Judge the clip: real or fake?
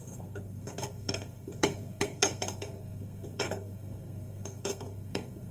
fake